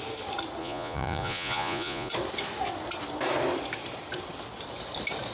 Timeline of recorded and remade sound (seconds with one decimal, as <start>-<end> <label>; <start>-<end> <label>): 0.0-0.6 recorded; 0.6-2.1 remade; 2.1-5.3 recorded

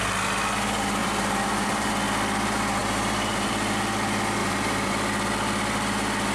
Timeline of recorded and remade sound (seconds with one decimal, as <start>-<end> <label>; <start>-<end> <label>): 0.0-1.0 recorded; 1.0-1.9 remade; 1.9-2.8 recorded; 2.8-3.5 remade; 3.5-4.4 recorded; 4.4-4.9 remade; 4.9-6.3 recorded

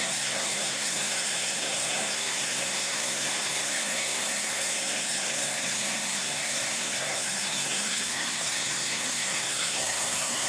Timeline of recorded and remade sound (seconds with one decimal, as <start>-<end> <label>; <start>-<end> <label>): 0.0-10.5 remade